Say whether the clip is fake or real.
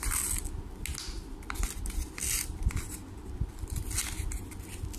real